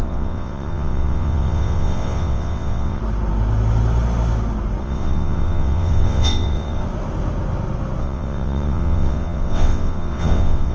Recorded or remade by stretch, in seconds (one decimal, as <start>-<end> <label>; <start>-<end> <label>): 0.0-3.0 remade; 3.0-4.8 recorded; 4.8-6.8 remade; 6.8-8.0 recorded; 8.0-10.7 remade